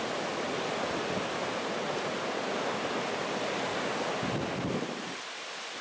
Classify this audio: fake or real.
real